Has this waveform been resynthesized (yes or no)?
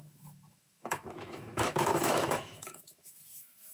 yes